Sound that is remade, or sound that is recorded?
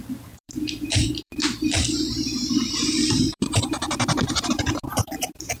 remade